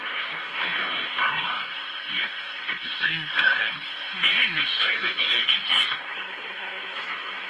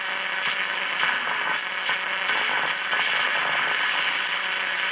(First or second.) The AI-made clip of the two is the first